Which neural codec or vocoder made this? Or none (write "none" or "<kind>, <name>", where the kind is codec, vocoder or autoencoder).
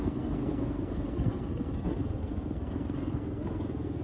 codec, SNAC